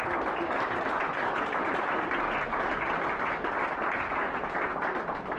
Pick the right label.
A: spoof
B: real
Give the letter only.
B